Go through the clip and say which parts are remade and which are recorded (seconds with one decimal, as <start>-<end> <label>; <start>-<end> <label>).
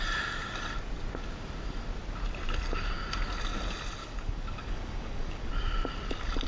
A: 0.0-4.0 recorded; 4.0-5.5 remade; 5.5-6.5 recorded